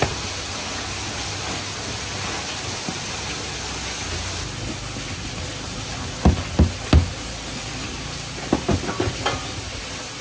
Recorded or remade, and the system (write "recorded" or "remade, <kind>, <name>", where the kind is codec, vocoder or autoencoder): recorded